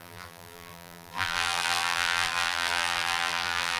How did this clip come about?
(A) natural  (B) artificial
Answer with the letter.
B